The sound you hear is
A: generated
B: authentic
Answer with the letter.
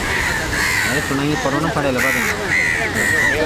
B